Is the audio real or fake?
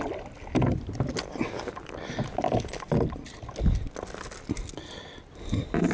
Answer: real